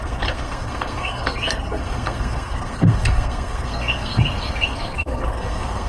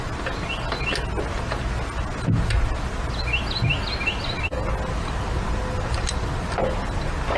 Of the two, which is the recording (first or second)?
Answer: second